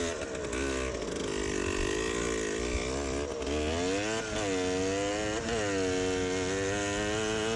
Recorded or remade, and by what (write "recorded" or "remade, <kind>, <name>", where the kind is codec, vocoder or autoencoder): recorded